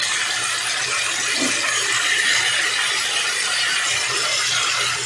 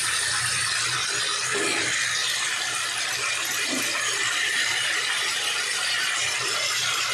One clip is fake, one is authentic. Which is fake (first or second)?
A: second